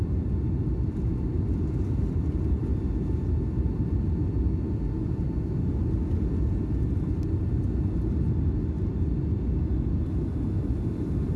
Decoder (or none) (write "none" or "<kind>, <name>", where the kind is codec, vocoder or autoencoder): none